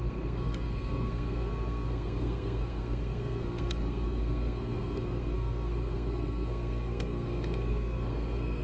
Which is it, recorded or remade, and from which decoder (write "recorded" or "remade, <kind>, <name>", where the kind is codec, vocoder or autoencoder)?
remade, codec, SNAC